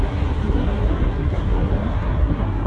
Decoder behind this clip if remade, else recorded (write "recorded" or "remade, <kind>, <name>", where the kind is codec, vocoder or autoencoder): remade, codec, SNAC